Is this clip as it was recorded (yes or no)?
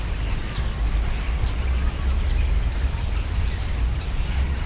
yes